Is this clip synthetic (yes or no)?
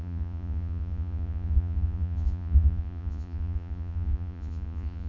yes